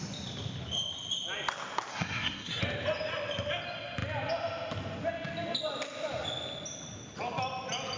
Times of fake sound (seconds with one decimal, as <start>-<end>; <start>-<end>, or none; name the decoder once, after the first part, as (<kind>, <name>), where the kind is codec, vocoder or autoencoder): 1.9-2.6 (codec, SNAC)